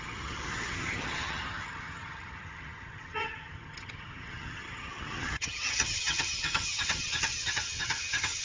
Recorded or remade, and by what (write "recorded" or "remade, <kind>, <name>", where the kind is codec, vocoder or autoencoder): remade, vocoder, HiFi-GAN